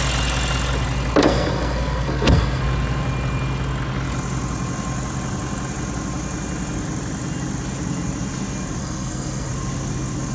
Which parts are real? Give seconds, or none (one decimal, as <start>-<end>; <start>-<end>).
0.0-1.2; 2.6-8.8; 9.5-10.3